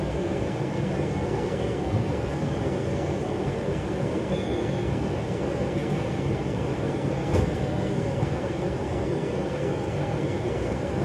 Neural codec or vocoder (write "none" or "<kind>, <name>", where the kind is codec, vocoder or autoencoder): codec, SNAC